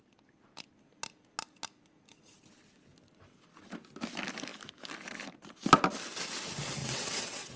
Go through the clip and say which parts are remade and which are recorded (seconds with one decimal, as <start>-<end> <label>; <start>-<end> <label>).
0.0-6.8 recorded; 6.8-7.6 remade